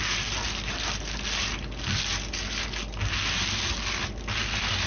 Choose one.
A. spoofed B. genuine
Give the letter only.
B